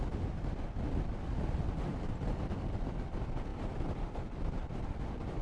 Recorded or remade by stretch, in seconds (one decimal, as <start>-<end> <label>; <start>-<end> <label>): 0.0-1.9 recorded; 1.9-2.8 remade; 2.8-3.5 recorded; 3.5-5.4 remade